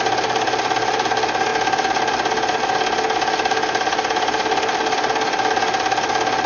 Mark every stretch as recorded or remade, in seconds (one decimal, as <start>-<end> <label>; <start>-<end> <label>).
0.0-6.5 recorded